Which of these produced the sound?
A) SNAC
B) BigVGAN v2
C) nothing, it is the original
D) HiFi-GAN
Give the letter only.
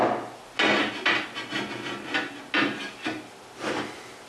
C